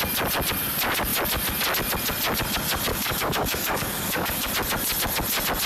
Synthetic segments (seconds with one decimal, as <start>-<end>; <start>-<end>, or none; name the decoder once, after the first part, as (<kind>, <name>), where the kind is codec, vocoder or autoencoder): 2.9-4.5 (codec, DAC)